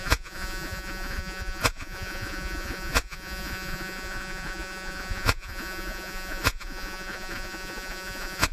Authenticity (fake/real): fake